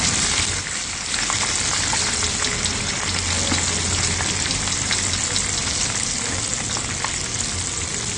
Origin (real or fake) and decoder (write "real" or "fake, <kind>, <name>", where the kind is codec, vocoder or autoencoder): real